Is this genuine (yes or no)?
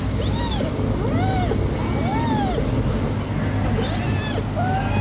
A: yes